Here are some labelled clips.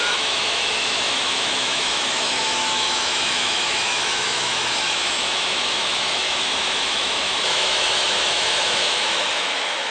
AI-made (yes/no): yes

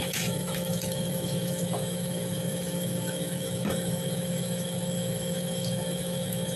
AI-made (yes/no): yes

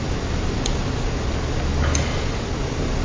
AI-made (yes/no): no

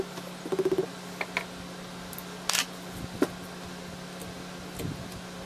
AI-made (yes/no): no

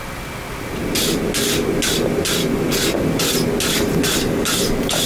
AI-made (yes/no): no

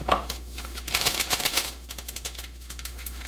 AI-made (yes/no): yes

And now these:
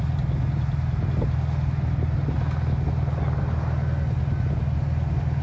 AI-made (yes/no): no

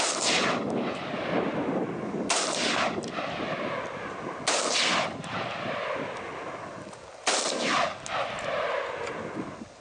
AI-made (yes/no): no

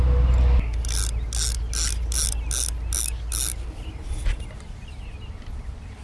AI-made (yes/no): no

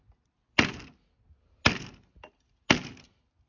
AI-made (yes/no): no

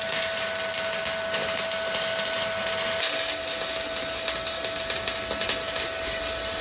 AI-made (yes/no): no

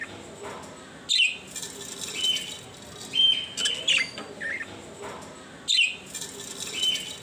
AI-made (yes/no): no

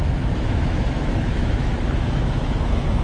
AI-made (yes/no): yes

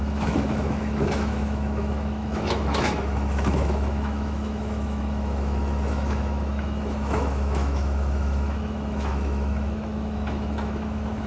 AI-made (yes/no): yes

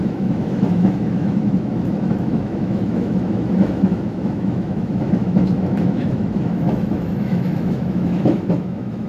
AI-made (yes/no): yes